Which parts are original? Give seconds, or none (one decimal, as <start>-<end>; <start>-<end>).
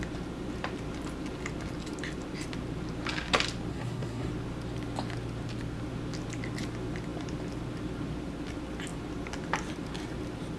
0.0-3.7; 4.3-10.6